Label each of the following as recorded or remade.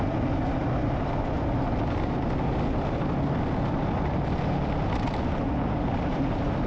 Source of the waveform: recorded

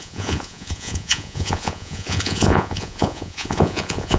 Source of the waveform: remade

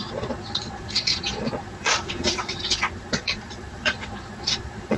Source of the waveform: remade